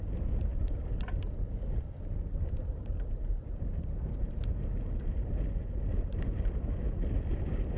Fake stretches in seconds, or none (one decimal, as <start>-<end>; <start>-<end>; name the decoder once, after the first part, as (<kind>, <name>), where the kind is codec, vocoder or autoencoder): 0.5-2.9 (vocoder, BigVGAN v2)